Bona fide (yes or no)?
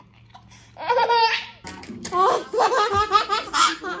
yes